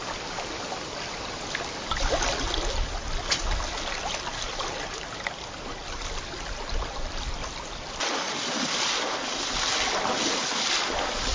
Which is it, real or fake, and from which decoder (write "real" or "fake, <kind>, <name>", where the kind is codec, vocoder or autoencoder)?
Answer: real